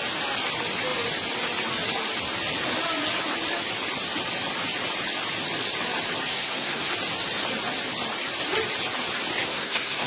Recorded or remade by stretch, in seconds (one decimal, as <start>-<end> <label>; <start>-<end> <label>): 0.0-6.3 recorded; 6.3-6.9 remade; 6.9-9.4 recorded; 9.4-10.1 remade